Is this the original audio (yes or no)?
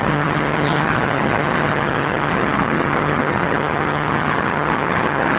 no